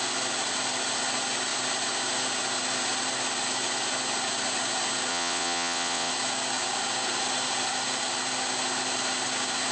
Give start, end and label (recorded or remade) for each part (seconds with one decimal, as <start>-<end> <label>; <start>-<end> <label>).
0.0-5.1 recorded; 5.1-6.1 remade; 6.1-9.7 recorded